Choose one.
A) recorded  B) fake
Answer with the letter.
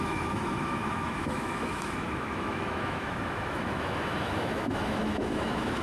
B